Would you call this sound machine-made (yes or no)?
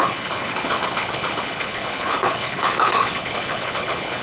yes